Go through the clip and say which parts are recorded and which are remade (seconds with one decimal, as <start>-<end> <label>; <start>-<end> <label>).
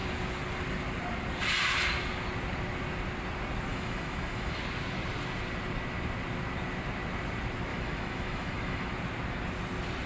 0.0-3.7 recorded; 3.7-4.6 remade; 4.6-7.7 recorded; 7.7-8.9 remade; 8.9-10.1 recorded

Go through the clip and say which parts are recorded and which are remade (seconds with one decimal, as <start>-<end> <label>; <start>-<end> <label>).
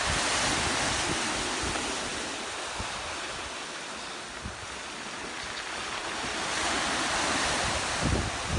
0.0-8.6 recorded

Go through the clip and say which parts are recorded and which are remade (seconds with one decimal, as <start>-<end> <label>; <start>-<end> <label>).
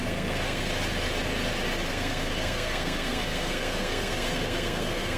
0.0-0.7 remade; 0.7-1.9 recorded; 1.9-5.2 remade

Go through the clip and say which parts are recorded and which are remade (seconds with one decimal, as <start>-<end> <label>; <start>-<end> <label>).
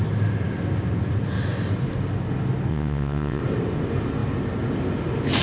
0.0-2.7 recorded; 2.7-3.4 remade; 3.4-5.4 recorded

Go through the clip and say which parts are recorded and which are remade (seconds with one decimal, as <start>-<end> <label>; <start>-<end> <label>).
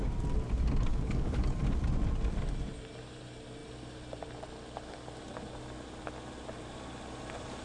0.0-0.9 recorded; 0.9-1.6 remade; 1.6-7.6 recorded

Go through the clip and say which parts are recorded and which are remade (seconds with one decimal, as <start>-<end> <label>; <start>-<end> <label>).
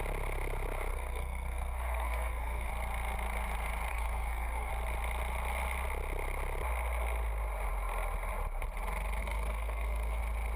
0.0-0.9 recorded; 0.9-2.7 remade; 2.7-3.9 recorded; 3.9-4.7 remade; 4.7-9.2 recorded; 9.2-10.2 remade; 10.2-10.6 recorded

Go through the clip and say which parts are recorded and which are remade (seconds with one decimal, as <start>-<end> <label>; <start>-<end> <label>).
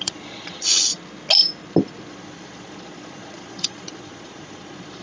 0.0-0.9 remade; 0.9-2.1 recorded; 2.1-5.0 remade